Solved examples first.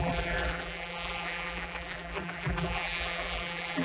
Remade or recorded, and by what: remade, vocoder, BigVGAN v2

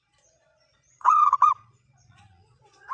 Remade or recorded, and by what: remade, vocoder, Vocos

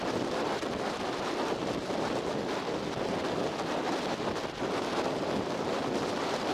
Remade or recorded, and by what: recorded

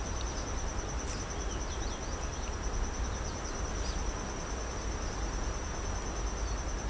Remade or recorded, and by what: recorded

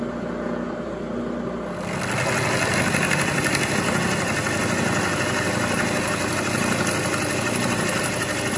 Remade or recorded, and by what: recorded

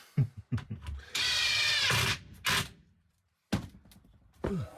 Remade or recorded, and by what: recorded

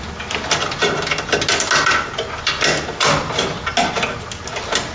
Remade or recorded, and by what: recorded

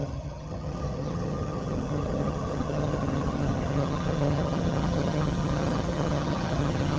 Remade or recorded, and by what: remade, vocoder, HiFi-GAN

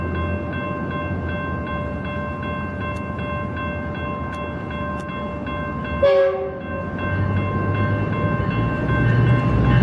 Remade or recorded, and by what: recorded